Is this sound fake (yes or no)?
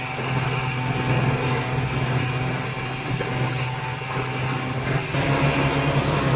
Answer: no